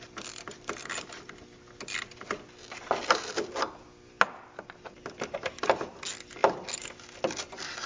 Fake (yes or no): no